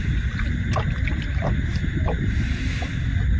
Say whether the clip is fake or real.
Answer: real